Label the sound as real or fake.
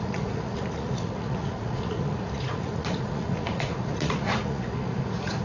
fake